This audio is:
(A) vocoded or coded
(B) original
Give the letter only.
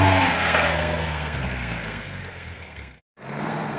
A